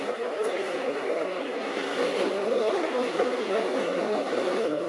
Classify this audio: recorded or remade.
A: remade